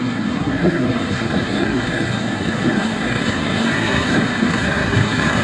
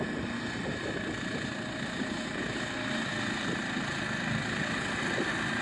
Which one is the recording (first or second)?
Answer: second